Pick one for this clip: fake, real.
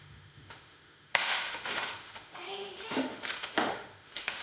fake